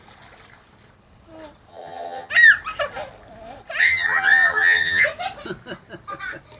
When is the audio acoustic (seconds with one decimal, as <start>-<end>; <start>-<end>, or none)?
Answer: 0.0-1.7; 2.3-3.8; 5.0-6.6